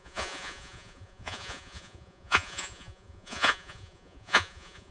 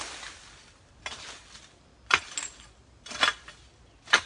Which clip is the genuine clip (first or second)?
second